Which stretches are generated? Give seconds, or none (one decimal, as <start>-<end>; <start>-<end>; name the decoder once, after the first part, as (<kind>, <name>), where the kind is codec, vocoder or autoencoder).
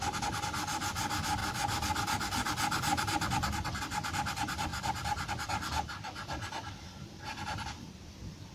0.0-4.7 (vocoder, BigVGAN v2); 5.3-8.5